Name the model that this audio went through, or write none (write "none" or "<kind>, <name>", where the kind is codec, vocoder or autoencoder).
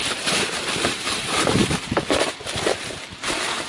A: vocoder, BigVGAN v2